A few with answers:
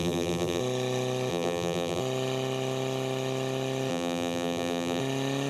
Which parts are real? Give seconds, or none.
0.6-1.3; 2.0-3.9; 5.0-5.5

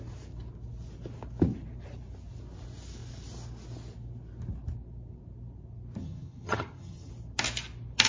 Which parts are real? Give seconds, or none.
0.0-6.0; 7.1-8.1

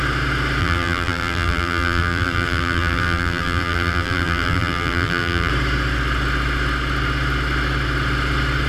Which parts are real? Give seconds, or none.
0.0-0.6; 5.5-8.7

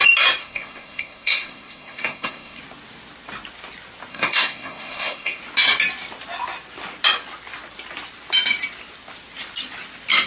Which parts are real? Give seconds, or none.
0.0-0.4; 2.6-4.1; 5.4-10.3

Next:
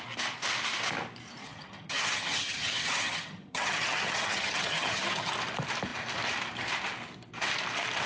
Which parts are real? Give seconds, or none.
0.0-1.4; 5.3-8.1